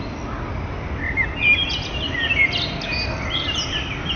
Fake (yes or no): no